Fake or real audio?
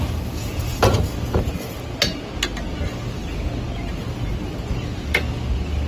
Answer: real